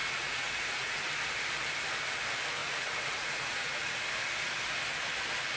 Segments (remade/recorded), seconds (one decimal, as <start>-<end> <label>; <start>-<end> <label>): 0.0-1.1 remade; 1.1-2.6 recorded; 2.6-4.0 remade; 4.0-5.6 recorded